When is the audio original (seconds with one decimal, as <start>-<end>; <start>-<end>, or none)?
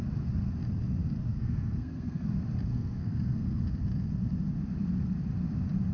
0.0-1.3; 2.3-2.7; 3.6-5.9